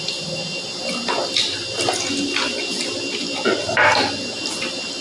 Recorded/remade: recorded